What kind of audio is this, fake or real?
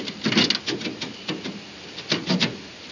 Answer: real